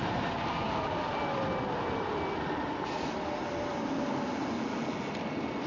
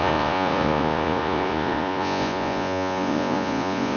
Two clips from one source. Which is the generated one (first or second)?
second